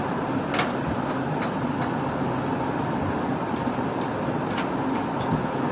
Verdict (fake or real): real